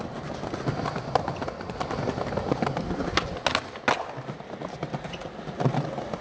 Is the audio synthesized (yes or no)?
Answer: no